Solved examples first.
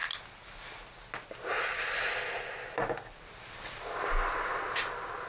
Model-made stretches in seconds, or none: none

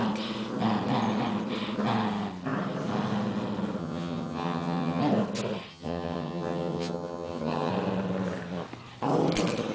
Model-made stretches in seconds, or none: 3.8-5.0 (vocoder, HiFi-GAN); 5.7-7.7